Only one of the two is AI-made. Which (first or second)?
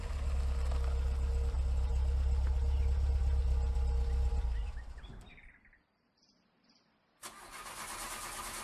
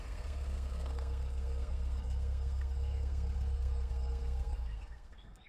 second